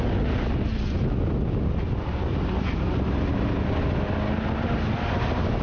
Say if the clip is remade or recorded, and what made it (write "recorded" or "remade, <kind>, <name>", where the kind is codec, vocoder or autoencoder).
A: recorded